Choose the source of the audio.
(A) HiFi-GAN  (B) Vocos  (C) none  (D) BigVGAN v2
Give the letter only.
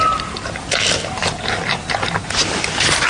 C